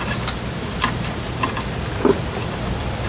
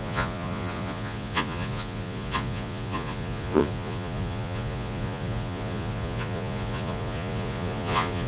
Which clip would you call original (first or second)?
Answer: first